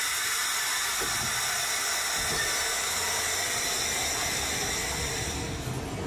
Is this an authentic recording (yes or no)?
yes